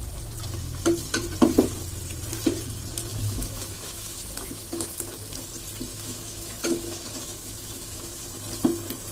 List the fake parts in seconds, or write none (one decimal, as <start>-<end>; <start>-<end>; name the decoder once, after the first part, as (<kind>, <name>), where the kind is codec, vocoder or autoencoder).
3.1-4.9 (autoencoder, DAC-VAE); 5.9-8.2